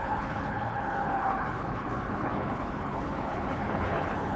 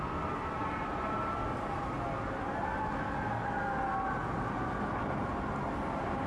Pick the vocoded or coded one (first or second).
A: first